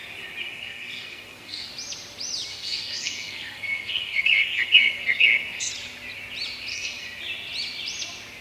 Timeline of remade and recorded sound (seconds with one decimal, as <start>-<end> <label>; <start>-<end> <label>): 0.0-0.4 recorded; 0.4-1.7 remade; 1.7-2.5 recorded; 2.5-5.7 remade; 5.7-6.7 recorded; 6.7-7.2 remade; 7.2-8.4 recorded